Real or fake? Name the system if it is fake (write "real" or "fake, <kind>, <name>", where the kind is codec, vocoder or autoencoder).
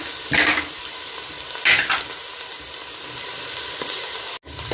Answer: real